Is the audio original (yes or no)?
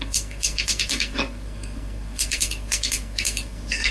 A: no